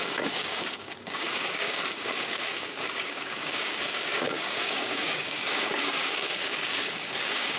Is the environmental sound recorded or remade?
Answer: remade